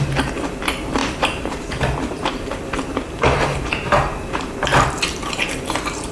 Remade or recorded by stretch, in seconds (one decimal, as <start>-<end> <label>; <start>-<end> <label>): 0.0-6.1 remade